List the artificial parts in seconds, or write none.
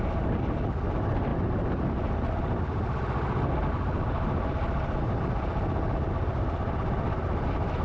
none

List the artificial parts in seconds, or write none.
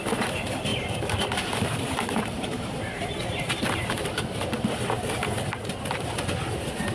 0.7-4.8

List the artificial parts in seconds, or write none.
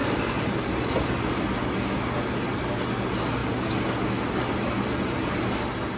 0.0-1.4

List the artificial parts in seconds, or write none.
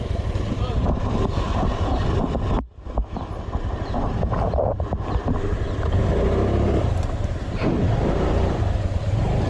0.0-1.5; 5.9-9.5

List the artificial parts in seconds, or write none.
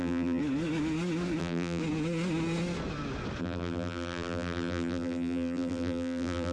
0.0-0.4; 1.4-1.8; 3.4-6.5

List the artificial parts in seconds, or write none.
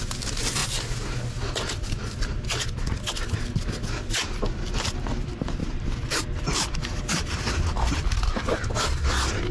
5.6-7.5